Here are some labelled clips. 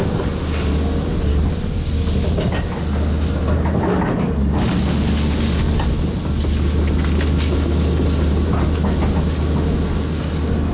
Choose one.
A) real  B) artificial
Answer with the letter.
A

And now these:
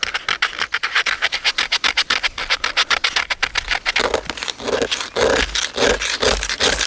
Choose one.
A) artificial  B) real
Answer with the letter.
B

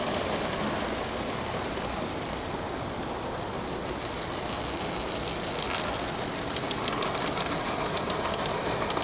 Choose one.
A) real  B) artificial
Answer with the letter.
A